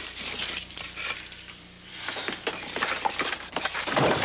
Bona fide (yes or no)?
no